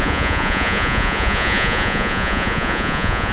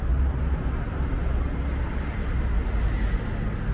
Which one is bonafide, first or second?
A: second